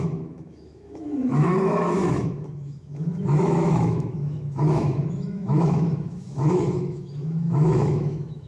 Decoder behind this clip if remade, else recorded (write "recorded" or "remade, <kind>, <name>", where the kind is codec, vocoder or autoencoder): remade, autoencoder, DAC-VAE